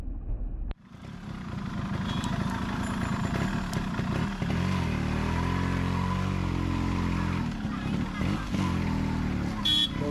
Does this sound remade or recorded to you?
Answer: recorded